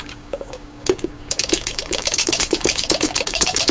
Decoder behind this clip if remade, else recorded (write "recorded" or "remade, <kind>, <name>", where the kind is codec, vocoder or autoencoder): remade, codec, DAC